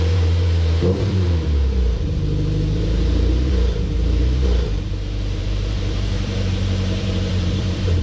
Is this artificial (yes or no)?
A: yes